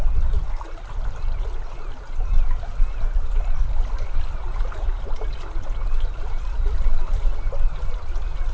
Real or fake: real